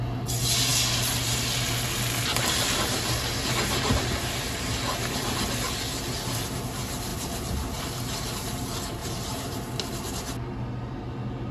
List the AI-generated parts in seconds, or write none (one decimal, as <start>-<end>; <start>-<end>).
7.1-7.8; 9.0-9.7